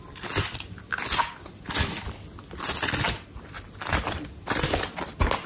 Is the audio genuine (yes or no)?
yes